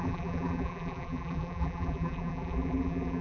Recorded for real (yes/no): no